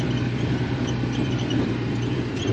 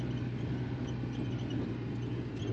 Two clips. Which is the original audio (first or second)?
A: second